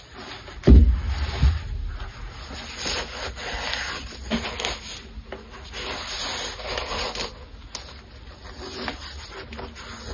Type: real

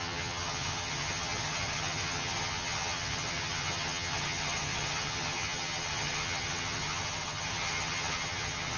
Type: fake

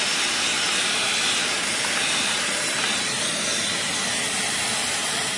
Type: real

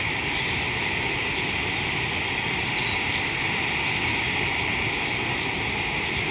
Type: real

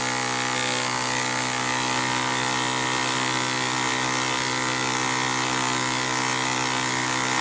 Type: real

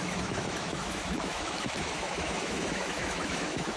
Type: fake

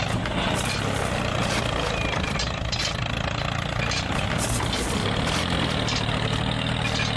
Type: real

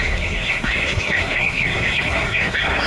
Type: fake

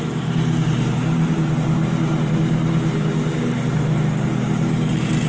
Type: real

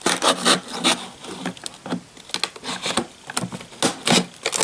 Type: real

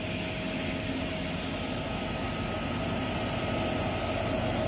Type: real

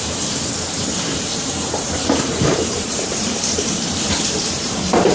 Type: fake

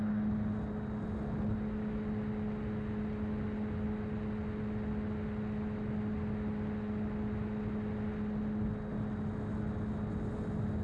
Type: real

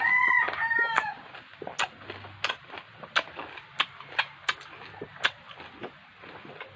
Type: real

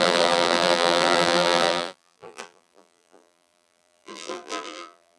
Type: fake